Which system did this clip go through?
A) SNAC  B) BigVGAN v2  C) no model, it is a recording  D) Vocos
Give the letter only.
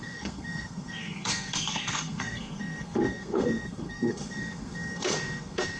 A